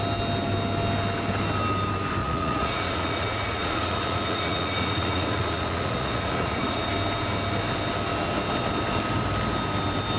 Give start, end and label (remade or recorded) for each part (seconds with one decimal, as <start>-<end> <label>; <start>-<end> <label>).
0.0-2.2 recorded; 2.2-6.9 remade; 6.9-10.2 recorded